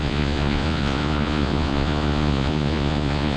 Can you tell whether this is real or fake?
fake